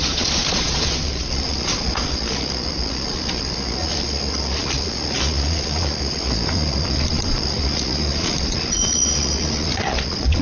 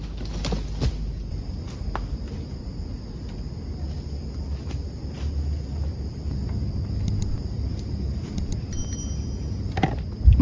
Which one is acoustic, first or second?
second